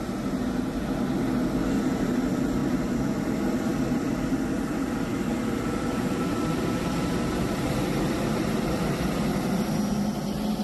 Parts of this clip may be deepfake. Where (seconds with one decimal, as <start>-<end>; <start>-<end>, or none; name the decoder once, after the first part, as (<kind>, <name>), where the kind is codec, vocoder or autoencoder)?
2.6-4.1 (vocoder, BigVGAN v2); 4.7-9.7